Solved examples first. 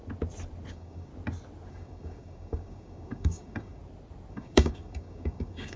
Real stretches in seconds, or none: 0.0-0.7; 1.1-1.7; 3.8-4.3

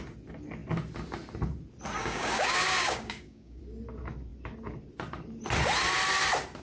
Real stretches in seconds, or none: 0.0-2.0; 3.6-6.6

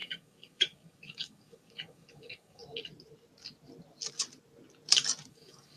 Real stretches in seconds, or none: 2.6-5.3

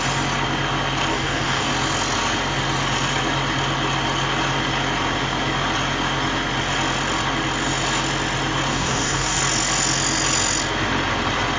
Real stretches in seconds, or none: 0.0-1.1; 1.7-8.7; 9.4-11.6

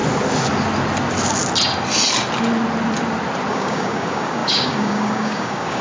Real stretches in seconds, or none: 0.0-3.5

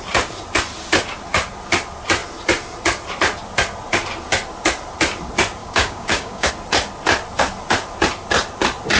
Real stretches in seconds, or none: 0.0-5.6; 6.5-9.0

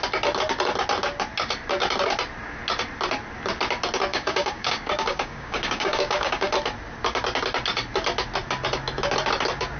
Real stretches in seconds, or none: 0.0-4.1; 6.5-9.8